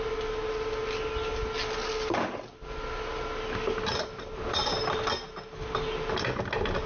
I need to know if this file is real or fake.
real